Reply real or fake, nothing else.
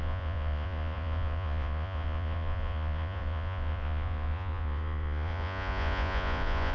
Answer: fake